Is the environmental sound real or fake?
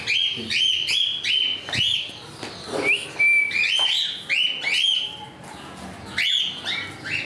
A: real